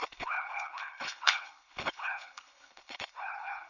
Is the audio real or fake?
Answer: fake